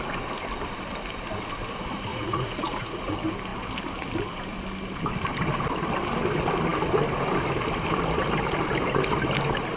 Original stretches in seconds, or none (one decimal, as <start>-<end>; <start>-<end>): 0.0-2.1; 3.1-9.8